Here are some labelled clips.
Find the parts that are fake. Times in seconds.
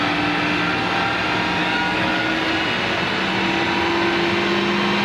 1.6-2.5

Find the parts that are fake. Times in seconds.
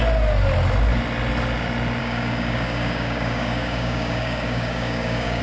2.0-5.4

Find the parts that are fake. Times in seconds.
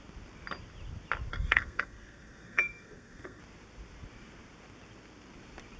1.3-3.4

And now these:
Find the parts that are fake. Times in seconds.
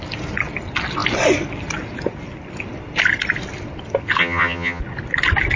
4.2-4.8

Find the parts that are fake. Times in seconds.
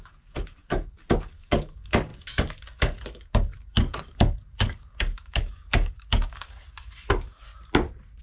0.0-7.5